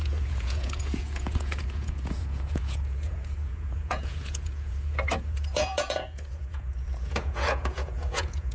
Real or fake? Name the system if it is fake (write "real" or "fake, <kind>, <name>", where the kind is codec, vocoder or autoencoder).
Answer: fake, vocoder, Vocos